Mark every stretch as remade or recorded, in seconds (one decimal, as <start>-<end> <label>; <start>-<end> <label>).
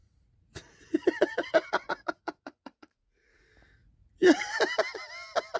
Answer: 0.0-3.4 remade; 3.4-3.8 recorded; 3.8-4.4 remade; 4.4-5.6 recorded